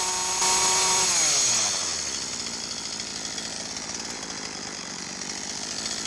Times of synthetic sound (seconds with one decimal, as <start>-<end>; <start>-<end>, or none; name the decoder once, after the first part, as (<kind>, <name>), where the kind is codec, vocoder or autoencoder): 0.0-0.4 (vocoder, BigVGAN v2); 1.7-3.1